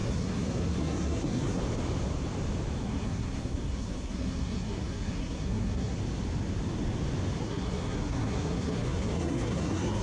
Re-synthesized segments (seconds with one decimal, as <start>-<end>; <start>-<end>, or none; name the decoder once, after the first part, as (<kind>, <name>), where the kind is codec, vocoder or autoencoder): 0.0-1.6 (codec, SNAC); 2.8-6.0; 7.4-10.0